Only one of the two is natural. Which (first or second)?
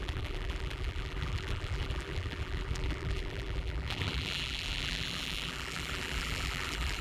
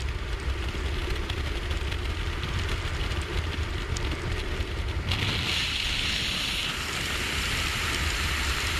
second